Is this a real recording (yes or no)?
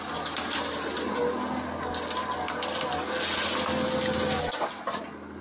yes